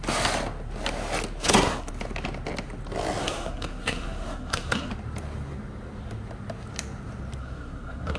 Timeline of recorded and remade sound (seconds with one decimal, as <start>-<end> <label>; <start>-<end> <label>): 0.0-1.4 recorded; 1.4-1.9 remade; 1.9-3.2 recorded; 3.2-4.9 remade; 4.9-7.4 recorded; 7.4-8.2 remade